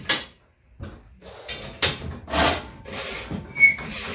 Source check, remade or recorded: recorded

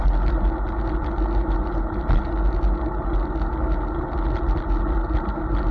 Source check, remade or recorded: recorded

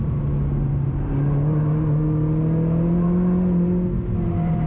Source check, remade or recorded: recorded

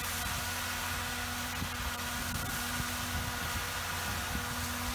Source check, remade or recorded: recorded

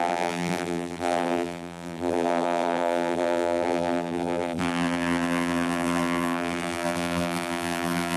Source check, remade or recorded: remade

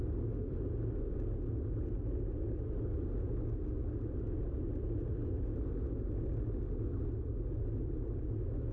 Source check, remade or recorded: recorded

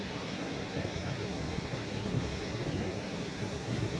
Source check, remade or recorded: remade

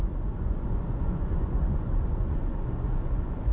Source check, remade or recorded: remade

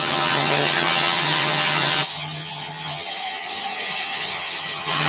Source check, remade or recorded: remade